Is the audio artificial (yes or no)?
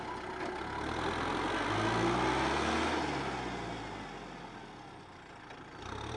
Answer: no